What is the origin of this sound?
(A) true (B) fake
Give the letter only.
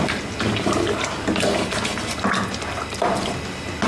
A